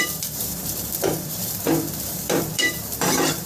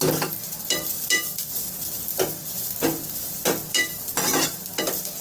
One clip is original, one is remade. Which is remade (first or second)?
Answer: first